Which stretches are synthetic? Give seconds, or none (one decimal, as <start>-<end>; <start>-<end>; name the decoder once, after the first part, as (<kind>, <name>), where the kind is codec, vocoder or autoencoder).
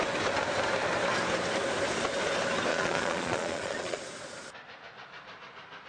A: 2.7-4.0 (vocoder, Vocos)